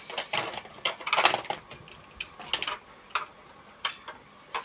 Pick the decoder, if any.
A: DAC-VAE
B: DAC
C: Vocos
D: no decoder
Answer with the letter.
D